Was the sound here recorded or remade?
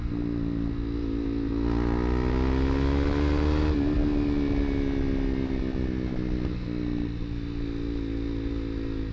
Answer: recorded